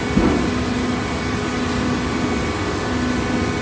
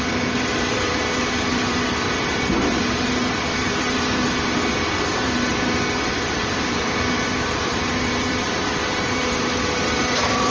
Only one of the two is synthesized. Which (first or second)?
second